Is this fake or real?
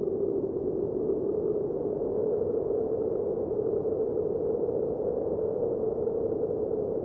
real